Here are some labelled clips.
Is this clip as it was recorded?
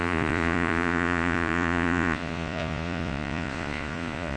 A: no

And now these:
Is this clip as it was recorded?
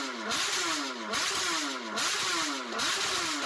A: yes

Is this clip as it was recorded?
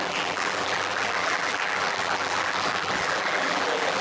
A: no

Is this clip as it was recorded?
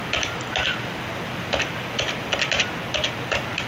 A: yes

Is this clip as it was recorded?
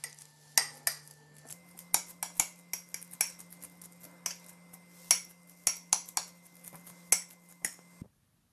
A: yes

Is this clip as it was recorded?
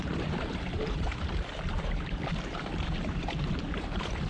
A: no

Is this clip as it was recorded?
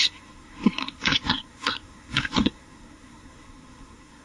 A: no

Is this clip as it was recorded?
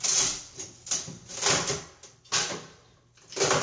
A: yes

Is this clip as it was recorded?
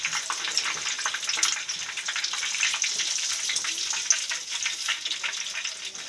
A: yes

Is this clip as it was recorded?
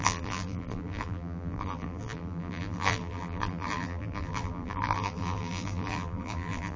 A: no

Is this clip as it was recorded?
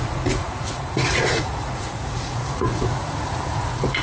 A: no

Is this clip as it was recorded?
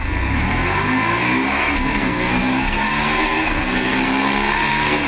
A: no